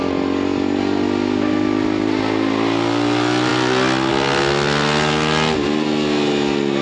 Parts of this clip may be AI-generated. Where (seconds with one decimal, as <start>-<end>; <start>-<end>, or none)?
none

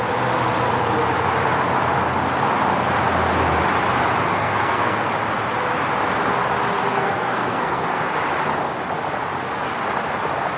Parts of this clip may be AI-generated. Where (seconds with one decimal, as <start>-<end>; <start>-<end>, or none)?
4.3-5.1; 6.9-8.0

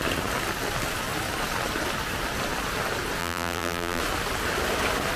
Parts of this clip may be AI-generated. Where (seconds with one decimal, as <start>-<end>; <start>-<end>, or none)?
3.2-4.0

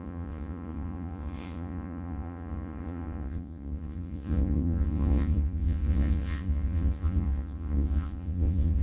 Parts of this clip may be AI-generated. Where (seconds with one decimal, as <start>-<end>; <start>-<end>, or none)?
0.0-8.8

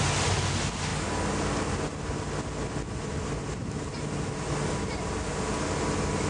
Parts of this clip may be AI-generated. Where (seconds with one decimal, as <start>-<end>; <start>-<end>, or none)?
none